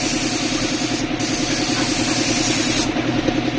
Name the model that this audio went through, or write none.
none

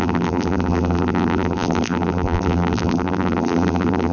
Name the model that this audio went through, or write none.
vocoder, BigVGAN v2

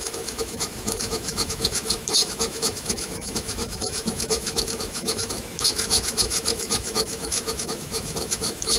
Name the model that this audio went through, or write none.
autoencoder, DAC-VAE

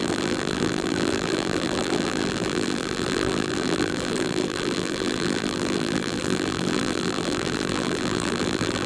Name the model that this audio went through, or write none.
vocoder, BigVGAN v2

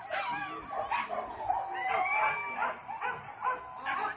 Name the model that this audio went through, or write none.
none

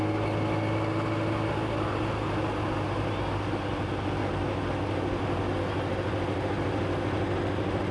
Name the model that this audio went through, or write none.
none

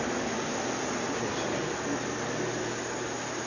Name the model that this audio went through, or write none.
none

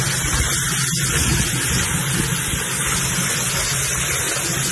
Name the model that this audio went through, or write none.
none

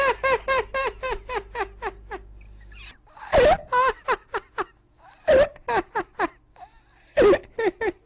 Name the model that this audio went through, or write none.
none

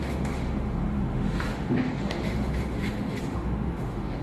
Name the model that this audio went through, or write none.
autoencoder, DAC-VAE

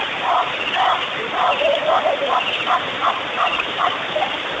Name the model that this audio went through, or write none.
vocoder, BigVGAN v2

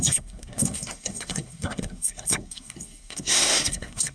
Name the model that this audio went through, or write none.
codec, SNAC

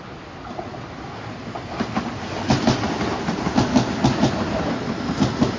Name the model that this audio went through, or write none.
none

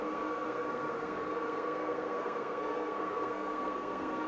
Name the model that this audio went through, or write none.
codec, SNAC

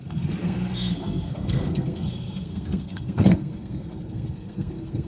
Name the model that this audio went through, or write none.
codec, SNAC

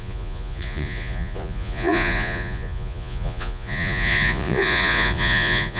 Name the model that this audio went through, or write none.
vocoder, Vocos